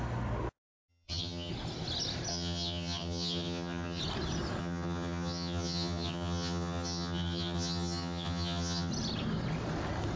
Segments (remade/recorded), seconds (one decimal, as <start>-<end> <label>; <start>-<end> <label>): 0.0-0.9 recorded; 0.9-1.5 remade; 1.5-2.3 recorded; 2.3-4.0 remade; 4.0-4.6 recorded; 4.6-8.9 remade; 8.9-10.2 recorded